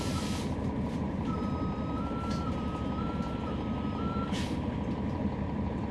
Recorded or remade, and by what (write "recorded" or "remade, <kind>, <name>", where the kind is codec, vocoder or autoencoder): remade, vocoder, BigVGAN v2